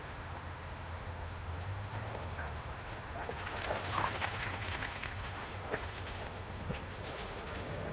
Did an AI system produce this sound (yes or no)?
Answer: yes